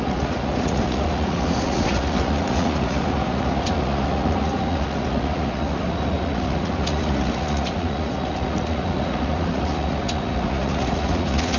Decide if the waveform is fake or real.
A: fake